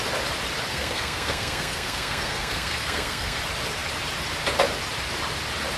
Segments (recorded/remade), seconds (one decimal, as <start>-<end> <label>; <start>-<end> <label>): 0.0-0.7 recorded; 0.7-3.4 remade; 3.4-5.8 recorded